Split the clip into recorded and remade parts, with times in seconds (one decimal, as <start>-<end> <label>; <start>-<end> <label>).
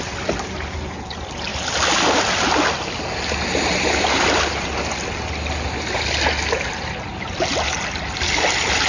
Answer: 0.0-8.9 recorded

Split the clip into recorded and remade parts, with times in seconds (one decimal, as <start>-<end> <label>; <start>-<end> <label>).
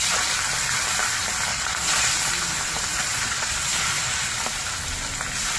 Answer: 0.0-1.5 recorded; 1.5-2.3 remade; 2.3-2.9 recorded; 2.9-4.6 remade; 4.6-5.6 recorded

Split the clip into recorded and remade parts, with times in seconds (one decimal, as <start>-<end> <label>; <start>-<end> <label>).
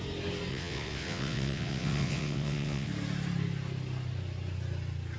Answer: 0.0-0.5 recorded; 0.5-2.9 remade; 2.9-5.2 recorded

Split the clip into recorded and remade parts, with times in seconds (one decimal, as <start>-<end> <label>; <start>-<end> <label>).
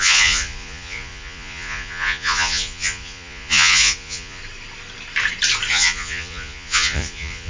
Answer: 0.0-4.4 remade; 4.4-5.7 recorded; 5.7-7.5 remade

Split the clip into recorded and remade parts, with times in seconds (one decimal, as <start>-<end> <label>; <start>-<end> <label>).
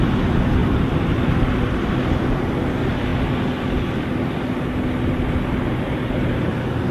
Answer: 0.0-0.6 recorded; 0.6-1.9 remade; 1.9-6.9 recorded